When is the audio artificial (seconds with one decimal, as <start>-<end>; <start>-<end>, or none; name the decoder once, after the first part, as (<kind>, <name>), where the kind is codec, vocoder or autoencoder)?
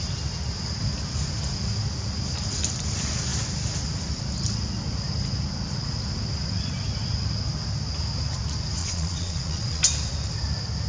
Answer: 8.8-9.8 (vocoder, Vocos)